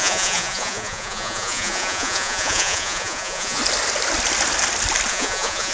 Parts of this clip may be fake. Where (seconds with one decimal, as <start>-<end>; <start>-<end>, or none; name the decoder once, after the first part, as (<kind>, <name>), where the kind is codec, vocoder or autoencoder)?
0.0-3.6 (vocoder, Vocos); 5.1-5.7